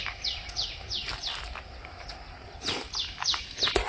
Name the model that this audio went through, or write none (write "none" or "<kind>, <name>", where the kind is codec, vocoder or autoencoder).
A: none